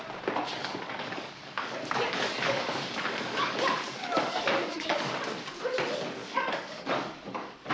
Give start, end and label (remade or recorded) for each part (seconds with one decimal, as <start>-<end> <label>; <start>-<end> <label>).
0.0-0.6 recorded; 0.6-5.2 remade; 5.2-6.2 recorded; 6.2-7.7 remade